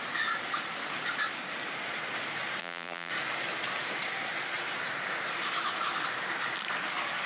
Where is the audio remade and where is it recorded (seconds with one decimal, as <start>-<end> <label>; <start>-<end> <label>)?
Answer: 0.0-2.6 recorded; 2.6-3.1 remade; 3.1-7.3 recorded